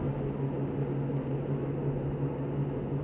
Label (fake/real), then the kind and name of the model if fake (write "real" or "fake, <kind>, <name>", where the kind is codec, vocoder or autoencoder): real